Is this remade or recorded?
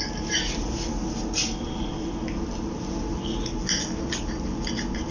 recorded